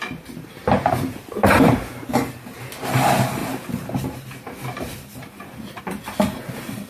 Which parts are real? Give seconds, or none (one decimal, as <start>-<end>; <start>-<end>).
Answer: 0.0-0.6; 2.0-3.4; 5.8-6.9